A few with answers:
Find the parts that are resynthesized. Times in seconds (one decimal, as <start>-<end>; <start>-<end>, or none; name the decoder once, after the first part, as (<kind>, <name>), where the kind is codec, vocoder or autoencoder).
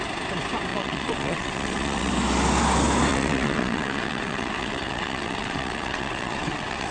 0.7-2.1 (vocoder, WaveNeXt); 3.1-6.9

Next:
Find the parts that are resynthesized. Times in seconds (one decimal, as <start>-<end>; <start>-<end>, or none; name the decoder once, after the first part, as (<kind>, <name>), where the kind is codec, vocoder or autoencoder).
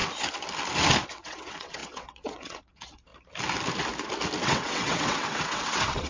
1.1-3.1 (vocoder, WaveNeXt); 4.4-6.1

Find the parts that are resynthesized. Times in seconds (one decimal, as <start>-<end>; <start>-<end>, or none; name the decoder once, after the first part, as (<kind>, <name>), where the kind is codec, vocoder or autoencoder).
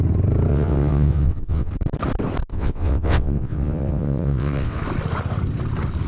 0.5-1.7 (vocoder, WaveNeXt); 2.5-4.8